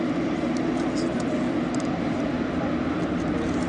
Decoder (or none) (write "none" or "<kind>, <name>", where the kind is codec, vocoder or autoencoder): none